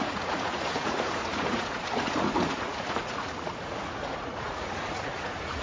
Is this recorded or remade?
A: remade